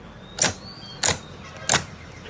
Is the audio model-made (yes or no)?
no